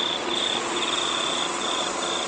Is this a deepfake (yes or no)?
yes